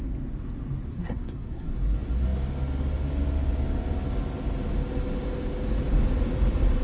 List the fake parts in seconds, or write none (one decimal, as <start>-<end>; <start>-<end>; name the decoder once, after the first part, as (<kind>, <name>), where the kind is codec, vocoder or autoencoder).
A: 0.9-1.7 (codec, SNAC)